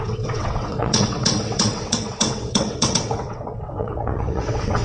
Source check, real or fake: fake